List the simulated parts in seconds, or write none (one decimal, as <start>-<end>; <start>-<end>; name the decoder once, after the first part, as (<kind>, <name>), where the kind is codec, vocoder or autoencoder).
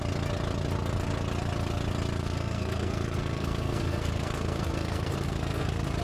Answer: 2.2-6.0 (codec, SNAC)